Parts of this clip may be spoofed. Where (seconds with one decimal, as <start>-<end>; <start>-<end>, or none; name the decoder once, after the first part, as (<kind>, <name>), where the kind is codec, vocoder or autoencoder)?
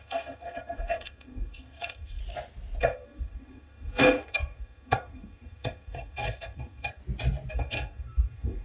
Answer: 0.0-2.2 (codec, SNAC); 2.8-7.0; 7.5-8.6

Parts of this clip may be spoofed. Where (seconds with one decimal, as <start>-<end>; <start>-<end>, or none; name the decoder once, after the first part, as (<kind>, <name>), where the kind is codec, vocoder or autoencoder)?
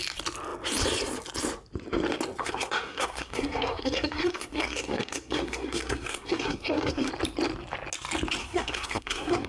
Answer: 2.4-7.1 (codec, SNAC); 8.4-9.5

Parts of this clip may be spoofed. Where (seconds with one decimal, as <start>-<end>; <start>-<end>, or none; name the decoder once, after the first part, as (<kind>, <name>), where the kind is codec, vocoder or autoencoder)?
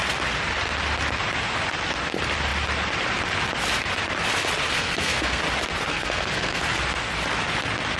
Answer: 4.7-5.4 (codec, SNAC); 5.9-6.6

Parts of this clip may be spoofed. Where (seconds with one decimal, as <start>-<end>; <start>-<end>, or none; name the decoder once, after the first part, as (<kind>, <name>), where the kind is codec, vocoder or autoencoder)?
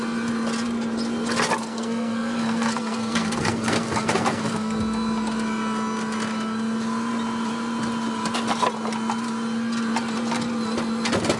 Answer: 1.6-4.8 (codec, SNAC)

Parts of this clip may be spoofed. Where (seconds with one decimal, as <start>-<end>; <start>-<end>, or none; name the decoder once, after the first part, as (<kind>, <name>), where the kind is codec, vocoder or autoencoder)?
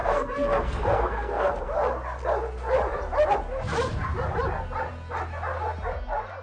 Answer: 0.0-1.7 (codec, SNAC)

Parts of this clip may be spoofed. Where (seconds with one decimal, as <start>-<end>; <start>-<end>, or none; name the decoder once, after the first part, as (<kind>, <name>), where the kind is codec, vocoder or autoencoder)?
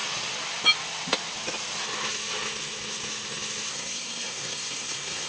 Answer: 3.7-5.3 (codec, SNAC)